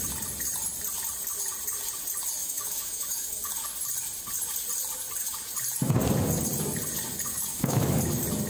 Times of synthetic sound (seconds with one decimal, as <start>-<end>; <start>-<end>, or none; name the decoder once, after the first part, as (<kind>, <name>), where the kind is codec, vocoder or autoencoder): 2.4-3.5 (autoencoder, DAC-VAE); 7.3-8.0

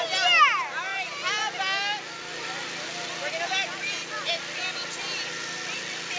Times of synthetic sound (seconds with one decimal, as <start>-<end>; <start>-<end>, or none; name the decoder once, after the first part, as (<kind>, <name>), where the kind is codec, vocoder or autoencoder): none